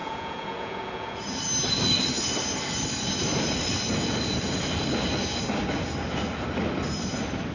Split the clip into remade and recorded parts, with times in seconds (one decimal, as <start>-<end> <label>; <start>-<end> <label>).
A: 0.0-1.2 remade; 1.2-7.5 recorded